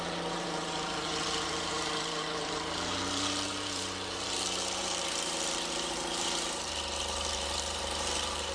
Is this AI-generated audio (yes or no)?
yes